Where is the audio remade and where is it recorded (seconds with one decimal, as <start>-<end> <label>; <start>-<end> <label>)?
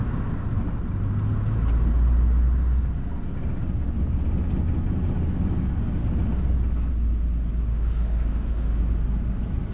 0.0-7.7 recorded; 7.7-8.8 remade; 8.8-9.7 recorded